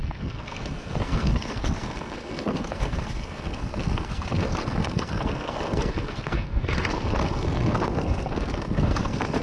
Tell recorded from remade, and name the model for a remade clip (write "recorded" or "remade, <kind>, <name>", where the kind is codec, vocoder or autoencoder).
remade, codec, SNAC